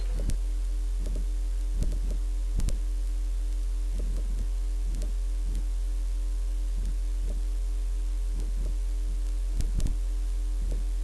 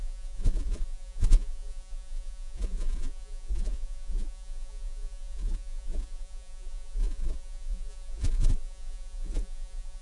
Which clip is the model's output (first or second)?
second